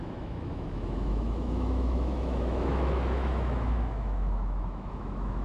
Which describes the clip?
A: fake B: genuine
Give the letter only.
A